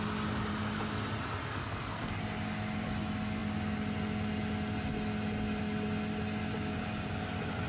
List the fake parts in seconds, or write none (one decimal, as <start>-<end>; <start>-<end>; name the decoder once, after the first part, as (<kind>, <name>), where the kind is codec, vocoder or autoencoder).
1.5-2.2 (codec, SNAC)